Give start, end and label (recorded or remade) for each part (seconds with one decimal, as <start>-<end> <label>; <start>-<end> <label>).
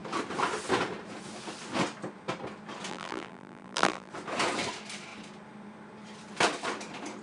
0.0-2.9 recorded; 2.9-4.1 remade; 4.1-7.2 recorded